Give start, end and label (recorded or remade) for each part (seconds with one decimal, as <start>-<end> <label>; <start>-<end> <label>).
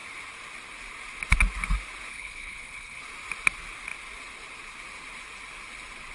0.0-2.1 recorded; 2.1-3.0 remade; 3.0-6.1 recorded